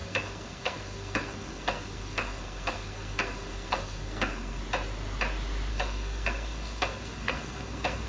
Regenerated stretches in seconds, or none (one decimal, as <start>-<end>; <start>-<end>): 0.0-4.6; 5.7-8.1